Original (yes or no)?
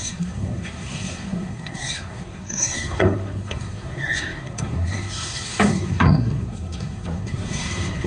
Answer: no